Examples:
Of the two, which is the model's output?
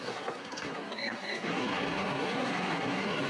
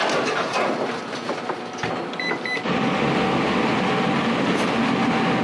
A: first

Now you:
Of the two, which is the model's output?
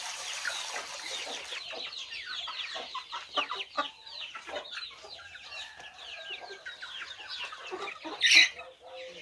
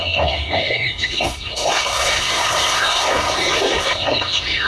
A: second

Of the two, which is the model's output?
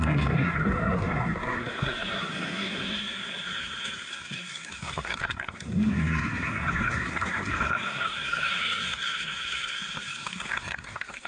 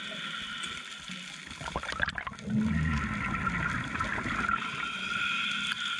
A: first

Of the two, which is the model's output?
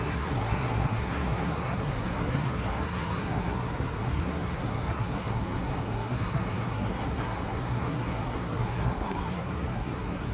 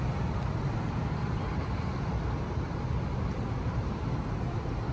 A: first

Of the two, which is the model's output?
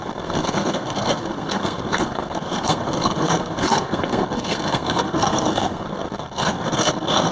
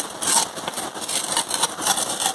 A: first